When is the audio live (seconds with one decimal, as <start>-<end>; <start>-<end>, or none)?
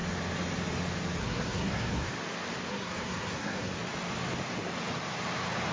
0.0-1.2; 2.1-2.7; 3.7-5.7